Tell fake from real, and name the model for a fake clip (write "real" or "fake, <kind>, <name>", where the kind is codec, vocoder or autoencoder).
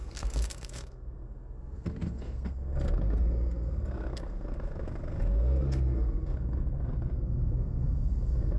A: fake, codec, SNAC